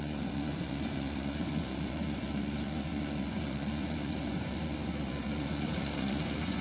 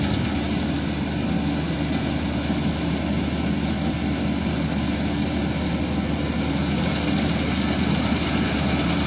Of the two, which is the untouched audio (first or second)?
second